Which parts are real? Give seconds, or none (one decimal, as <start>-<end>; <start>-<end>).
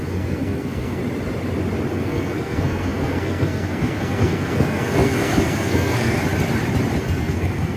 1.0-1.9; 6.2-7.0